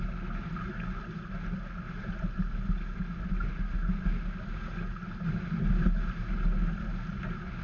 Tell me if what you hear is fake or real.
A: real